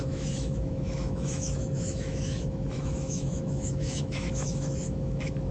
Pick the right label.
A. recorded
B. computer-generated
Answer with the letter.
B